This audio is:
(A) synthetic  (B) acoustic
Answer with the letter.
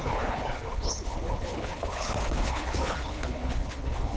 A